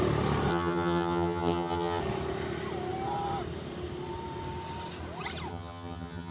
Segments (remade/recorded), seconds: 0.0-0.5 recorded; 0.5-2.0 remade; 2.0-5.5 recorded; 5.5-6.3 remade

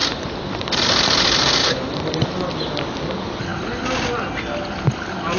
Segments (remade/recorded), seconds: 0.0-0.7 remade; 0.7-1.6 recorded; 1.6-2.1 remade; 2.1-5.4 recorded